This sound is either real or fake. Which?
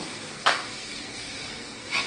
fake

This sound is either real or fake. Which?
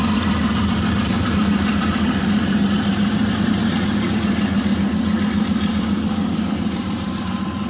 fake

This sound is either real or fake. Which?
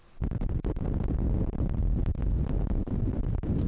real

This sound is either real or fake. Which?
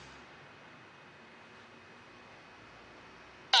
real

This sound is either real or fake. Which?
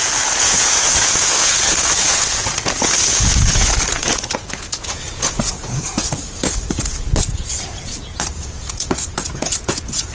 fake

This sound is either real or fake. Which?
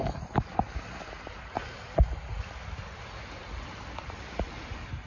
real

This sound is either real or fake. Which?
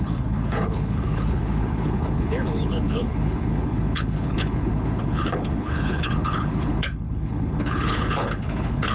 fake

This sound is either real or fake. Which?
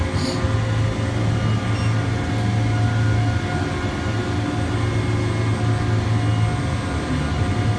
real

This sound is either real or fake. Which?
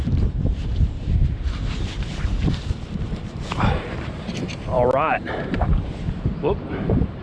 fake